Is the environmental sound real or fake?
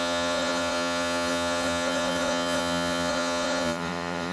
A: fake